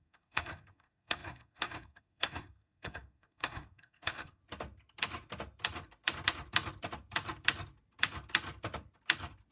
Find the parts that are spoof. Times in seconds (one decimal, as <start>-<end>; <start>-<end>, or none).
0.0-4.4